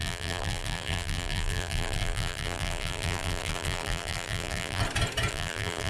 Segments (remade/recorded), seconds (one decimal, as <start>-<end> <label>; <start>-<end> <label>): 0.0-4.8 remade; 4.8-5.3 recorded; 5.3-5.9 remade